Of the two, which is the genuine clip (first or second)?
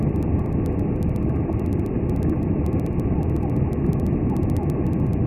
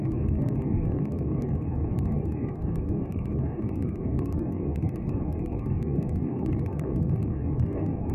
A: first